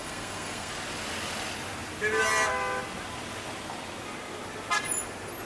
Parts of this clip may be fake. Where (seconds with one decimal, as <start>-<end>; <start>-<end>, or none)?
0.0-0.7